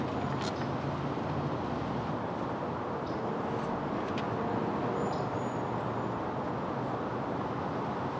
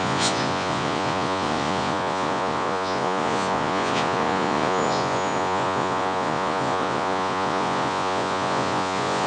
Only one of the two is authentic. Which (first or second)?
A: first